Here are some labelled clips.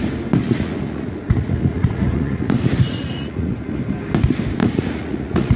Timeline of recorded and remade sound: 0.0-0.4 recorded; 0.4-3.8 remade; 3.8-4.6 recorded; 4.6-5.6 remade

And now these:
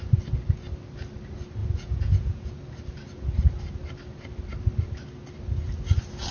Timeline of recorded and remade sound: 0.0-1.6 recorded; 1.6-2.5 remade; 2.5-6.3 recorded

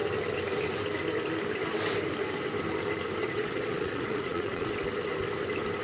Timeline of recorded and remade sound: 0.0-3.2 recorded; 3.2-4.7 remade; 4.7-5.8 recorded

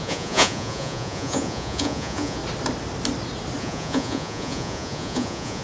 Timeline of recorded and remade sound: 0.0-2.4 remade; 2.4-3.6 recorded; 3.6-5.6 remade

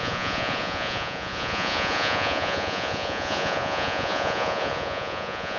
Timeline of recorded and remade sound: 0.0-5.6 remade

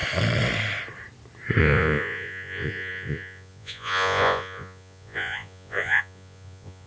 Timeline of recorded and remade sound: 0.0-1.6 recorded; 1.6-6.9 remade

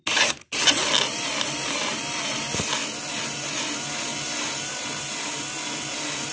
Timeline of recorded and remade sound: 0.0-6.3 recorded